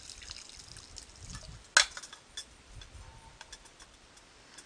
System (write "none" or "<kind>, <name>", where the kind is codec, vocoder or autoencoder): none